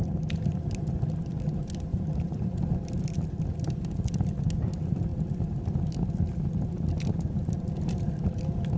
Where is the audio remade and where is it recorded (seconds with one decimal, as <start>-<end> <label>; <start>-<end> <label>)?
0.0-1.9 recorded; 1.9-2.6 remade; 2.6-8.8 recorded